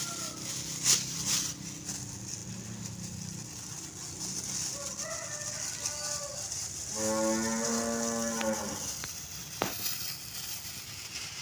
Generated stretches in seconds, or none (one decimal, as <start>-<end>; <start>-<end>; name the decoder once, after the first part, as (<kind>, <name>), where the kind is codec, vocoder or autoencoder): none